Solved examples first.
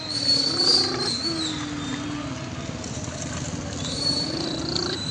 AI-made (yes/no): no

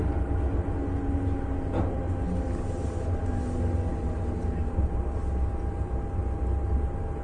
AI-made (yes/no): no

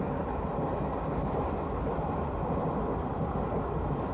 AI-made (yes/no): no